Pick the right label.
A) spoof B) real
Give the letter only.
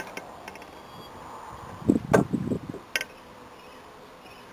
B